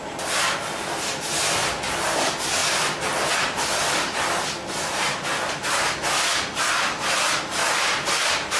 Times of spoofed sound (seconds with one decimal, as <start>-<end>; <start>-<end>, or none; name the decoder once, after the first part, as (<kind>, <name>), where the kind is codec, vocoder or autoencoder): 0.0-7.6 (vocoder, BigVGAN v2); 8.2-8.6